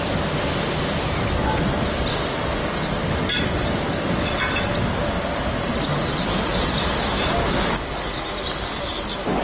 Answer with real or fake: real